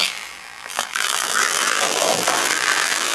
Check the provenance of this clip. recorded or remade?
remade